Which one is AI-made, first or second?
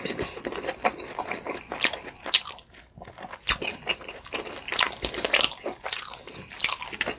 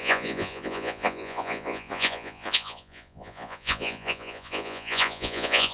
second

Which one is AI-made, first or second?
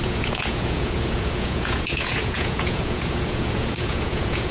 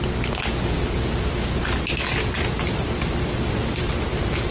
first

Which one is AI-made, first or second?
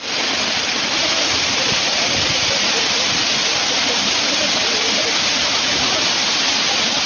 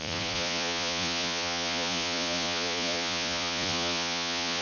second